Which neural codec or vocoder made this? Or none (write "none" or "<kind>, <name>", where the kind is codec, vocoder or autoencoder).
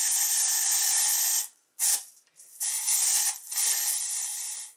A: none